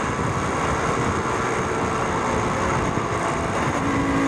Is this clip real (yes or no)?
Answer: yes